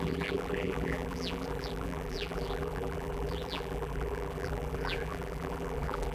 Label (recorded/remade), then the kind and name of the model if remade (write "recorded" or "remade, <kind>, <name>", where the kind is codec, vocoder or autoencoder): remade, vocoder, BigVGAN v2